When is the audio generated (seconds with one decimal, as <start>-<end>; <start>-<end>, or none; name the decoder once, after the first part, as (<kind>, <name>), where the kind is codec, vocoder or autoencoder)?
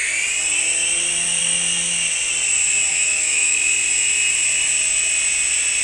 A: 2.9-3.6 (autoencoder, DAC-VAE)